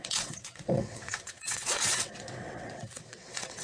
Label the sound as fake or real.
fake